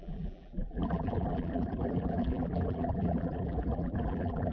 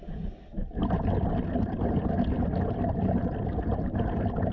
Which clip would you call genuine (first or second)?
second